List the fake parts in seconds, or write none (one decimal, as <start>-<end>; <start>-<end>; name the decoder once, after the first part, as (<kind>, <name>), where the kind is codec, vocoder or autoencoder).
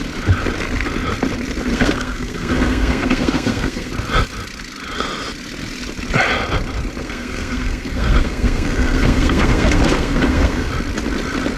1.7-3.9 (codec, SNAC); 7.0-10.7